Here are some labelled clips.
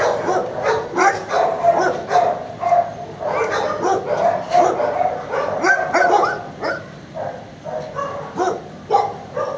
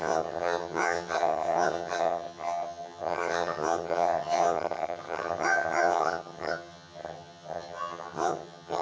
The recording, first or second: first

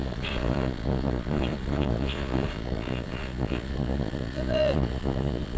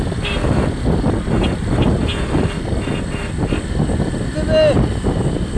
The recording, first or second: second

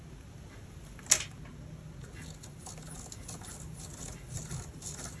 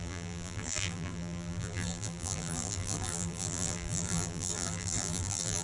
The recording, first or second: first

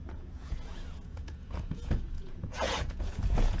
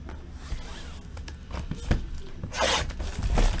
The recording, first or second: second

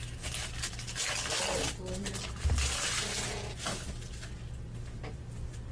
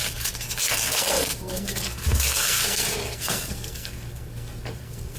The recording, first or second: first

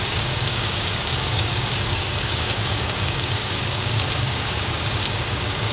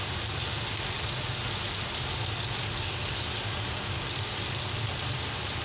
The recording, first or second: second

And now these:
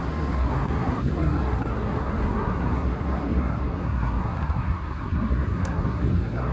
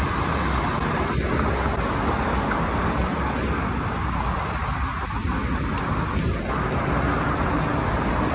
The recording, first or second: second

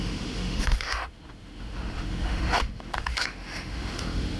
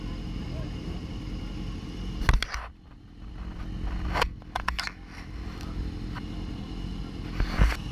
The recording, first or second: second